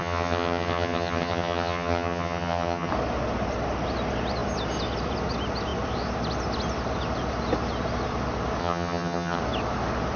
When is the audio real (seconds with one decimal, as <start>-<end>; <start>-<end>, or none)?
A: 2.9-8.6; 9.4-10.2